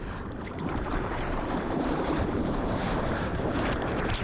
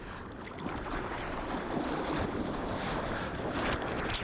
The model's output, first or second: first